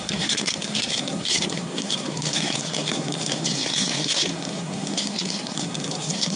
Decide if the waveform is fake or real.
fake